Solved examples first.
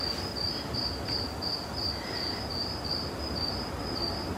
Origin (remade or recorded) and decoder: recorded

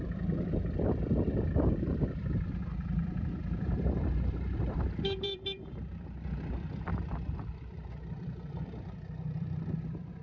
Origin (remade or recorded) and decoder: remade, vocoder, BigVGAN v2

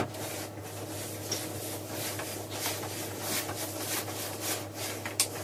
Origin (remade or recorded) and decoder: recorded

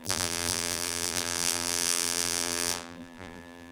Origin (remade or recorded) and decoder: remade, vocoder, BigVGAN v2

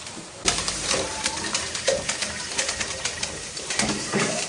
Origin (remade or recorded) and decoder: remade, vocoder, BigVGAN v2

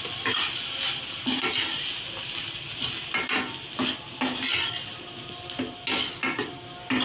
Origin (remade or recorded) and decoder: recorded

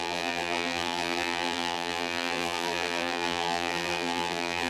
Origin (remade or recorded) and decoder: remade, vocoder, BigVGAN v2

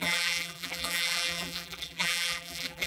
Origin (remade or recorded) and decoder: remade, vocoder, BigVGAN v2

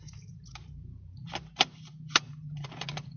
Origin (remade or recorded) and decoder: remade, vocoder, BigVGAN v2